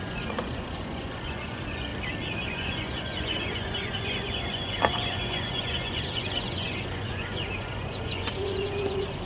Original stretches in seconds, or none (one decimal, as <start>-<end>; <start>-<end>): 1.9-2.5